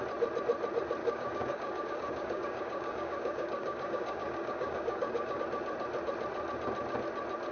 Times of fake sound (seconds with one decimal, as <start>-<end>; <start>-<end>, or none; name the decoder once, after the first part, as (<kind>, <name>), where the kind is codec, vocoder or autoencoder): 1.0-5.4 (codec, DAC)